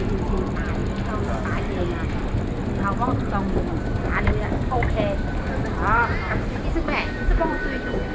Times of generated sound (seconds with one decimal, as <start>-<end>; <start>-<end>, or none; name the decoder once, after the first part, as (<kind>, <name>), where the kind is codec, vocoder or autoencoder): none